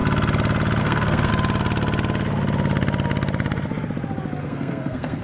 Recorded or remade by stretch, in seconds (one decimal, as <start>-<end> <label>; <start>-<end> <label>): 0.0-0.8 recorded; 0.8-1.3 remade; 1.3-4.4 recorded; 4.4-5.2 remade